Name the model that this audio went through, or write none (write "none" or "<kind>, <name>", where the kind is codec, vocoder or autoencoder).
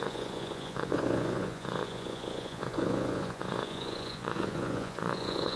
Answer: vocoder, Vocos